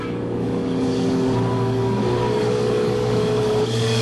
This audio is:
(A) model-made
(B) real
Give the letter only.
A